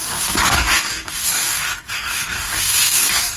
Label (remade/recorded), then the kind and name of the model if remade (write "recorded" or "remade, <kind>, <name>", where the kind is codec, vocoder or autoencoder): remade, codec, DAC